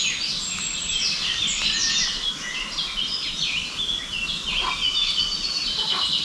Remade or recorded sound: recorded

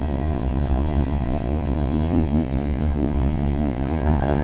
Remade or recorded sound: remade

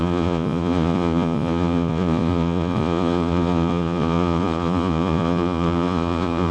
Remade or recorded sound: remade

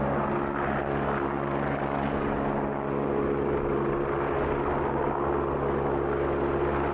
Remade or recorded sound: recorded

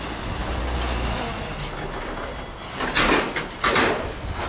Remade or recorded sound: recorded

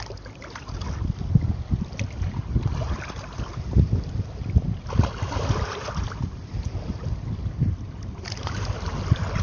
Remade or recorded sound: recorded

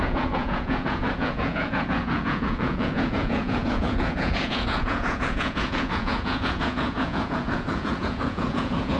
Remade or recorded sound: remade